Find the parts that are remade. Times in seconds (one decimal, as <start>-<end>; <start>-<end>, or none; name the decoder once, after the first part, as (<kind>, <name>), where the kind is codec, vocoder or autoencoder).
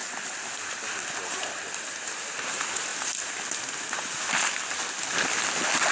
none